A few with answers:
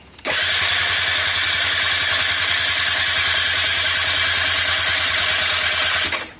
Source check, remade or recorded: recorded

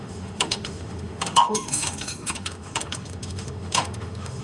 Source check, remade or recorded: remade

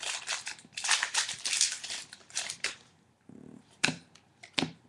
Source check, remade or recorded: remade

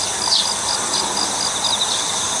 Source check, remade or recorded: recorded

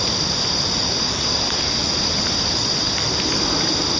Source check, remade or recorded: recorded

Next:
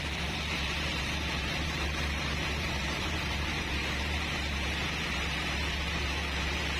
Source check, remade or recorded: remade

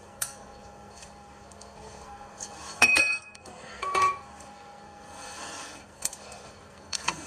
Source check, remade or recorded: remade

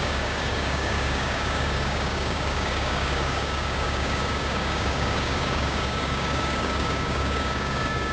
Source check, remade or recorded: remade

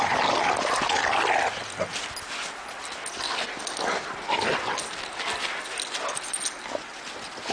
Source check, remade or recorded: recorded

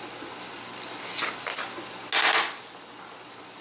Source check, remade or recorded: recorded